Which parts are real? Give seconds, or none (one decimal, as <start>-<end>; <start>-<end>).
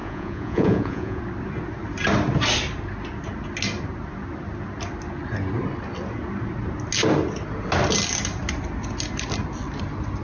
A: 1.2-10.2